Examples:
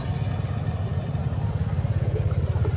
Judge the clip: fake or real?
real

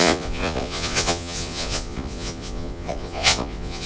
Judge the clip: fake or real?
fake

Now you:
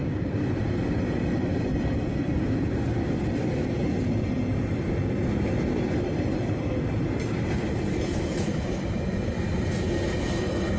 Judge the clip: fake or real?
real